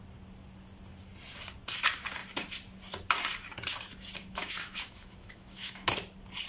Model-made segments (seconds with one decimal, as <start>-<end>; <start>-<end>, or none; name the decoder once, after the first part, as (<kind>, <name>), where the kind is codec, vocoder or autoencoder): 4.2-5.9 (autoencoder, DAC-VAE)